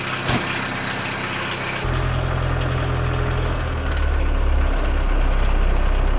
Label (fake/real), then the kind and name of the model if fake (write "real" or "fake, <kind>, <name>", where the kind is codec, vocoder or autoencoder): real